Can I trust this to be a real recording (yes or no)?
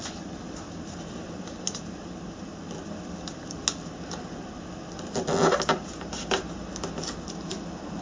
yes